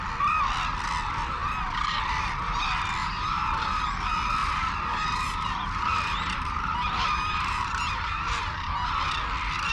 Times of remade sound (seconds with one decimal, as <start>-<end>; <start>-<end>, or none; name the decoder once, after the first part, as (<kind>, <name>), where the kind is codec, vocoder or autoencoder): 3.0-3.8 (vocoder, BigVGAN v2); 4.4-9.0